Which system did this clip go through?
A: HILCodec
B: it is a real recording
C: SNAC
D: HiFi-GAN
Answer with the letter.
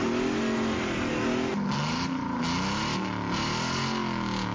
B